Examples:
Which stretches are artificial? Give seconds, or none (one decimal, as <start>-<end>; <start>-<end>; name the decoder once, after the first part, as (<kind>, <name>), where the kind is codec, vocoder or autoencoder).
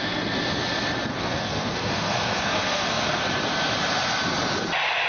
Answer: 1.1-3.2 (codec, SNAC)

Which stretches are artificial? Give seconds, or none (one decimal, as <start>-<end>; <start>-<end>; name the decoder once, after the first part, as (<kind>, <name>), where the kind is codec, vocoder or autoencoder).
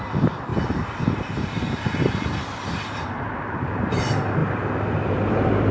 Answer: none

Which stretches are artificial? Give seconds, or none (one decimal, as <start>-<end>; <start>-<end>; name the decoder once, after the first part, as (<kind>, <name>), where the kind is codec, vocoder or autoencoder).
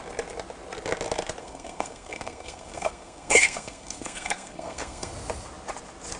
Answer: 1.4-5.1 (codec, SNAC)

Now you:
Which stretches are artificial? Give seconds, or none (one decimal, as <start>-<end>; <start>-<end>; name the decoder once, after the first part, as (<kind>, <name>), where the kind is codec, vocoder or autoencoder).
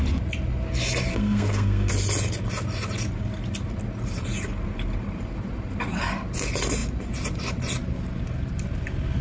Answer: 1.1-1.9 (codec, SNAC)